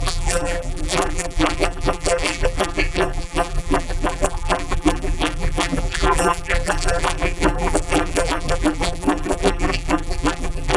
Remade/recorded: remade